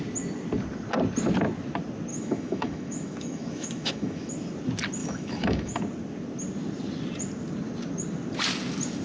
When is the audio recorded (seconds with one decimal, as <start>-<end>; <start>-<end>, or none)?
0.0-2.1; 4.3-5.0; 5.8-9.0